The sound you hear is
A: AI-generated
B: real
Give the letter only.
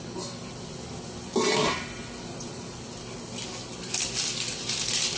B